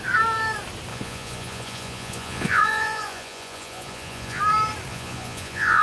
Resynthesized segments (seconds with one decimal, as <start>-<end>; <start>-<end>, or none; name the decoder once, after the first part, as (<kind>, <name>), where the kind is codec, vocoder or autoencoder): 0.9-4.4 (vocoder, Vocos); 4.9-5.8

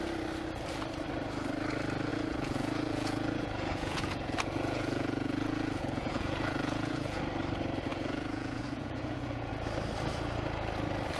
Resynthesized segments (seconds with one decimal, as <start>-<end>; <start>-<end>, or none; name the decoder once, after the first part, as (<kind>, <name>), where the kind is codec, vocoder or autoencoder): 2.1-7.2 (vocoder, Vocos); 7.9-9.5

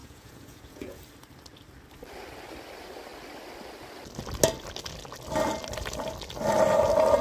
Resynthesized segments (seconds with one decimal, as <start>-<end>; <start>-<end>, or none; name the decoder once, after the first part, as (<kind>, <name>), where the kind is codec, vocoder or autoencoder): 0.0-1.0 (vocoder, Vocos)

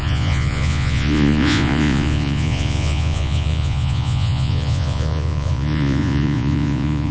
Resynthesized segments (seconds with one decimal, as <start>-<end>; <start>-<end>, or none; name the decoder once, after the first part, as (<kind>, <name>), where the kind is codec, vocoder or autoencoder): 0.0-7.1 (vocoder, Vocos)

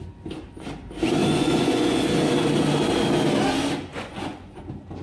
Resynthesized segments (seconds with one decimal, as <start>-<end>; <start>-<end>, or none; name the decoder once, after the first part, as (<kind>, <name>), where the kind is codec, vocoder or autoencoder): 1.2-2.0 (vocoder, Vocos); 3.9-4.6

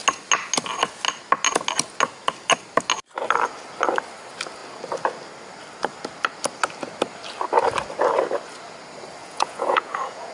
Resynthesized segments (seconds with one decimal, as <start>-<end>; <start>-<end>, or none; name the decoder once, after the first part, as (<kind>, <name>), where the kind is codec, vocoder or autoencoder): 9.2-10.3 (vocoder, Vocos)

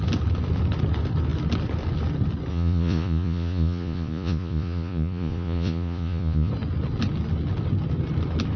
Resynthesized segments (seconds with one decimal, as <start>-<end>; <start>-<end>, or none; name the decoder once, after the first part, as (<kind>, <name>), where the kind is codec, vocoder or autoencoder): 2.5-6.5 (vocoder, Vocos)

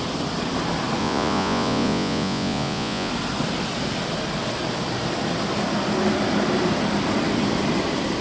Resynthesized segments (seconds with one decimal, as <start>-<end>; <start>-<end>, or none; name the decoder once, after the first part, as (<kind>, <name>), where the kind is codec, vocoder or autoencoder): 1.0-3.1 (vocoder, Vocos)